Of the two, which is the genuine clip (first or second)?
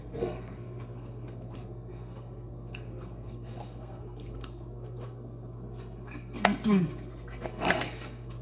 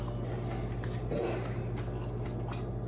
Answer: second